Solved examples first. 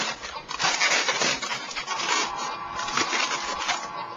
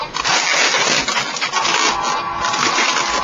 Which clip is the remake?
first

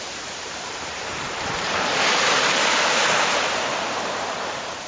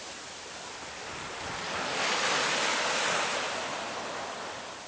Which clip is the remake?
first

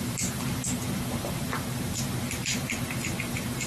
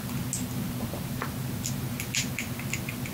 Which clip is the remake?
first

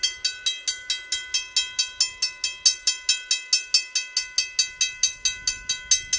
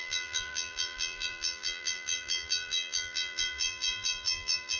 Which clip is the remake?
second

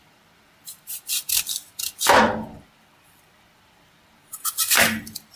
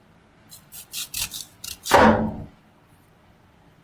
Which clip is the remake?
first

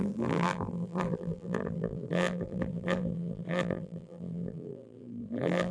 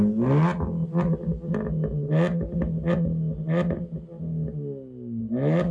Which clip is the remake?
first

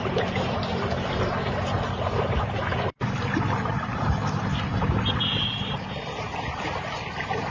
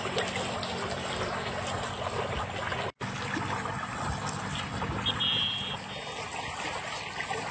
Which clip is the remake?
first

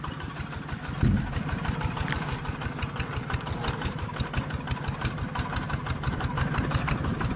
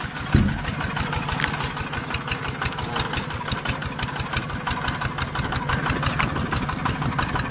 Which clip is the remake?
first